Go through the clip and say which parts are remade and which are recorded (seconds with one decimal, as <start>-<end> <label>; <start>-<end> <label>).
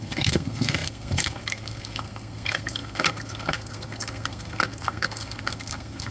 0.0-6.1 remade